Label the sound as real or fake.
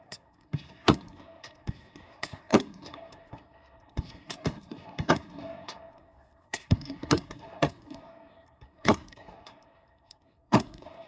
fake